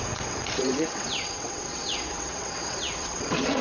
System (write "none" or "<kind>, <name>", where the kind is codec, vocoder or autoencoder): vocoder, WaveNeXt